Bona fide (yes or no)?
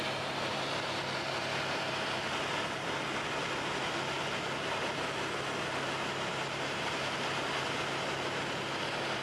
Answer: yes